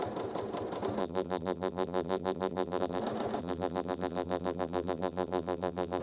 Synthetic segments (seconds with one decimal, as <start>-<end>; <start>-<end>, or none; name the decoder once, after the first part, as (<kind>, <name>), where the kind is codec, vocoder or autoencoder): 1.0-3.0 (vocoder, BigVGAN v2); 3.4-6.0